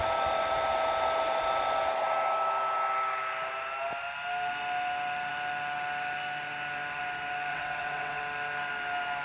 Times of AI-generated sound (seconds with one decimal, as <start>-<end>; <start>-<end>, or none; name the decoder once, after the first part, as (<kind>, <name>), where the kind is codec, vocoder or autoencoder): 7.5-8.2 (vocoder, WaveNeXt)